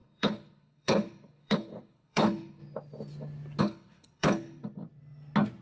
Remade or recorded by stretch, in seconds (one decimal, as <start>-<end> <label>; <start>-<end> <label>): 0.0-2.6 remade; 2.6-3.6 recorded; 3.6-4.6 remade; 4.6-5.6 recorded